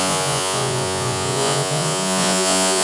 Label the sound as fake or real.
fake